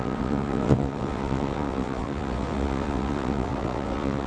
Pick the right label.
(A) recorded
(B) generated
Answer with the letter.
B